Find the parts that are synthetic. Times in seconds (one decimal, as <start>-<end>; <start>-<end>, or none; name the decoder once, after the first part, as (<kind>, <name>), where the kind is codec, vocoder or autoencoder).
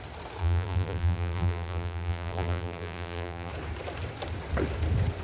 0.4-3.5 (vocoder, BigVGAN v2)